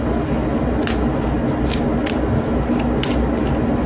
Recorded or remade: recorded